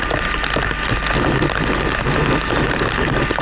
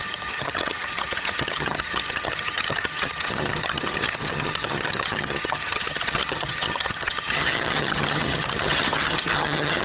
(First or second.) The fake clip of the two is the second